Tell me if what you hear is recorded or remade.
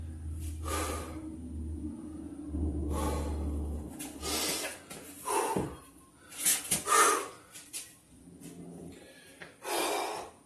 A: recorded